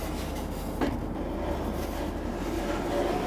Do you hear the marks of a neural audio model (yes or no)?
no